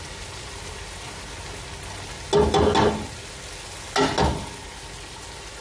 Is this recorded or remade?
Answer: recorded